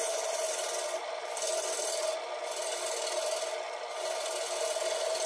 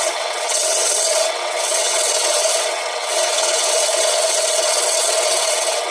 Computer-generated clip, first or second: second